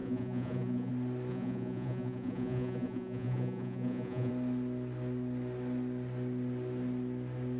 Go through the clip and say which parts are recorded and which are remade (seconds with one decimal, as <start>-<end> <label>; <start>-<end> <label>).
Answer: 0.0-0.9 remade; 0.9-1.3 recorded; 1.3-4.3 remade; 4.3-7.6 recorded